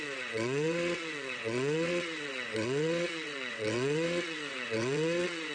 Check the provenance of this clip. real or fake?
fake